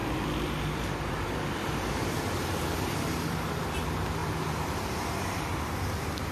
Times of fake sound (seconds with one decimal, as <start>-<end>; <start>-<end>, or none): 0.0-3.1; 4.2-5.2